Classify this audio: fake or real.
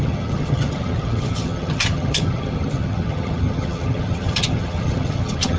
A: fake